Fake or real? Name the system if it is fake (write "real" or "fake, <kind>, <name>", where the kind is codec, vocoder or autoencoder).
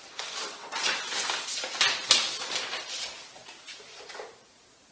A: real